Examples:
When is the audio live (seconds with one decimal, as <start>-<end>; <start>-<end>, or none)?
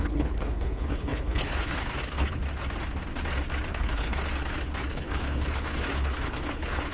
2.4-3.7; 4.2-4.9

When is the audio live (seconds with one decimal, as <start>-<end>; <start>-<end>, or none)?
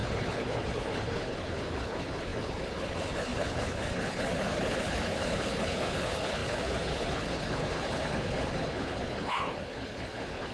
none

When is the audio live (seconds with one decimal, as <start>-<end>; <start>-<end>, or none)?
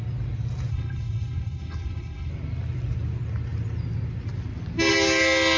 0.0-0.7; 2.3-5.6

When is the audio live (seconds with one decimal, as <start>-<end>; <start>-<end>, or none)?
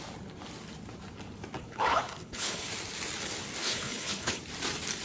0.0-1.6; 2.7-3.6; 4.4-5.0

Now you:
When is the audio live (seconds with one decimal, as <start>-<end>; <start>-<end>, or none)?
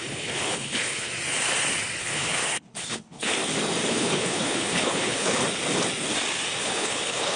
1.1-2.0; 3.3-3.9; 5.4-6.6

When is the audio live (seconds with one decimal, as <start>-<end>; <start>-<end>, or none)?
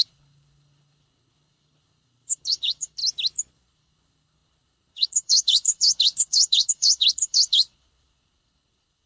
3.0-3.5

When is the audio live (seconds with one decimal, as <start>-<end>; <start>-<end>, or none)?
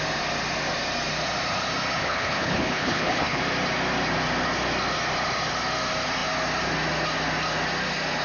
0.0-2.0; 3.4-8.2